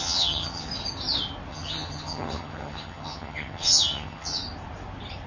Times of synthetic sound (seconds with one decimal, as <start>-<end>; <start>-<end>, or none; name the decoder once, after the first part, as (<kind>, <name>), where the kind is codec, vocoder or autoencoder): 0.0-0.7 (vocoder, HiFi-GAN); 1.5-4.4

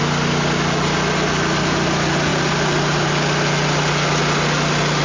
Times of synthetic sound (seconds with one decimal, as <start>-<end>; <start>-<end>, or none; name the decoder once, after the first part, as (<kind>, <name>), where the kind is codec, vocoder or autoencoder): none

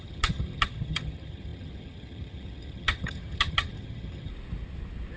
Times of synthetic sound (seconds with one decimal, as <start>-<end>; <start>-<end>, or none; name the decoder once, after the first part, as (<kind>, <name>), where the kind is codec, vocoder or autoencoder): 0.0-4.3 (vocoder, HiFi-GAN)